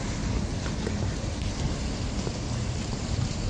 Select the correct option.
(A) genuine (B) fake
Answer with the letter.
A